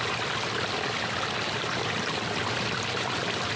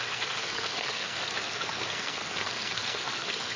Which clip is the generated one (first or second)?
second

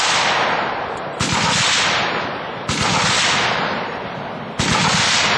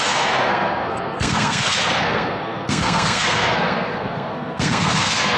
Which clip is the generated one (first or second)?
second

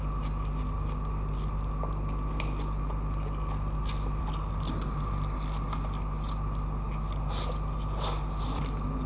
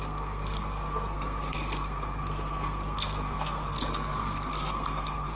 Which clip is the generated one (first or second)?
second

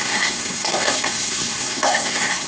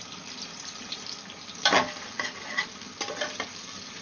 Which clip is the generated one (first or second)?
first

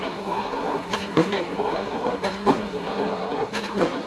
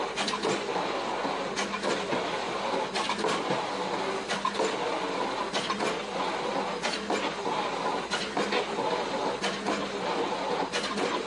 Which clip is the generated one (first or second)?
first